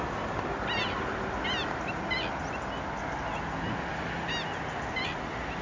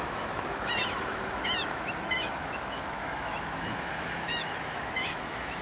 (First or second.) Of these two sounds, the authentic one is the first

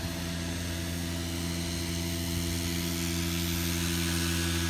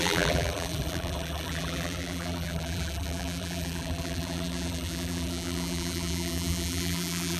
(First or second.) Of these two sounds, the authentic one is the first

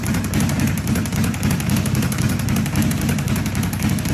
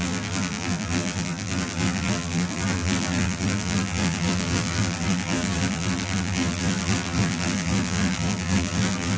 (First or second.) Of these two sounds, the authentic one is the first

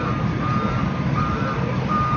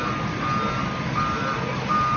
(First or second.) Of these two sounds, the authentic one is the second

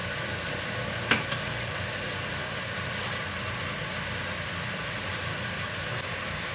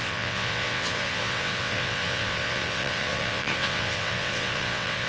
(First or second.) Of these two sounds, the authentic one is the first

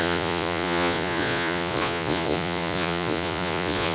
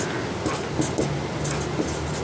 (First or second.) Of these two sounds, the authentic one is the second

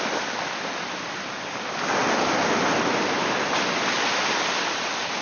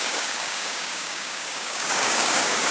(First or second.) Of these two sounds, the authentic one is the first